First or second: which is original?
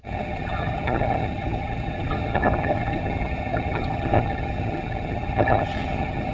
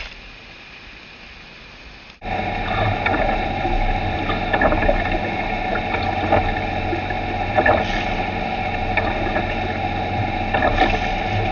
second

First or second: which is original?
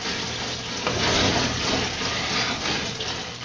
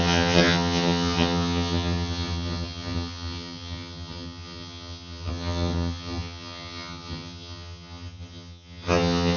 first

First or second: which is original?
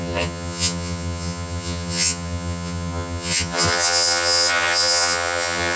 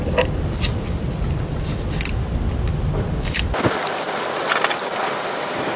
second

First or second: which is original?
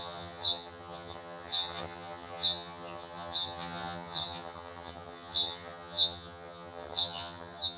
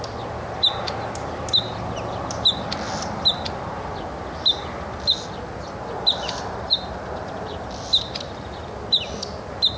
second